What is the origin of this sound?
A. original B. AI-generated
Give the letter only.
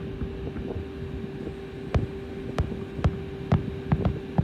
A